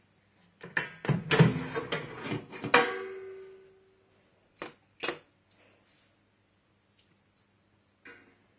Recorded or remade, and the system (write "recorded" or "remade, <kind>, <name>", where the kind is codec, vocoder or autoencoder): recorded